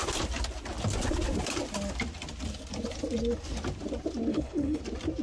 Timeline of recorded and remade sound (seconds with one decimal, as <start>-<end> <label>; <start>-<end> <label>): 0.0-4.3 recorded; 4.3-4.8 remade; 4.8-5.2 recorded